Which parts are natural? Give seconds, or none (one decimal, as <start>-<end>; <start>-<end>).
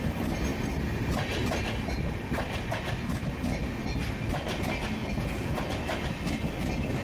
0.0-5.0; 5.7-7.0